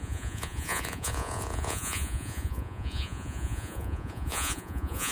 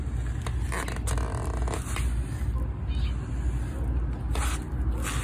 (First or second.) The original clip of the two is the second